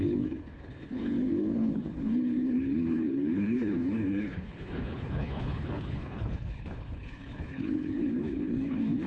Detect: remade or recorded remade